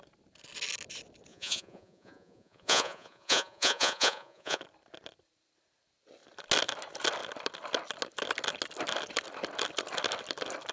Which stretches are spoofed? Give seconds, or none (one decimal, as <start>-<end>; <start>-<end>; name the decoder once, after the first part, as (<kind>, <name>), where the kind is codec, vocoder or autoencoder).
1.3-4.6 (vocoder, Vocos)